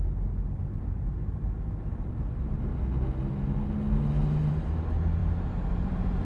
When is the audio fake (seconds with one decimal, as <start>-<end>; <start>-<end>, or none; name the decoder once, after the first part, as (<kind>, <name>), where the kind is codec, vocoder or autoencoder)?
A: 5.2-6.2 (vocoder, BigVGAN v2)